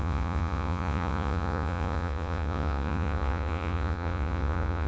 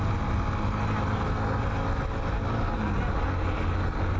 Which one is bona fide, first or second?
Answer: second